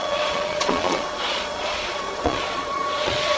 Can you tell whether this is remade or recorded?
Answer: remade